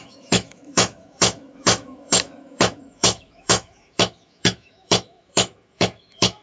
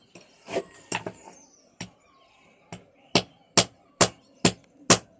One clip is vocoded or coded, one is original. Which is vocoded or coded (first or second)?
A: first